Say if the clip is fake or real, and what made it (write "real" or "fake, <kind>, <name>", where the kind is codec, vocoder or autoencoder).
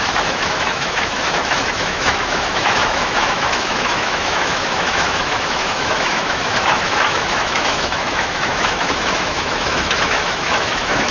fake, autoencoder, DAC-VAE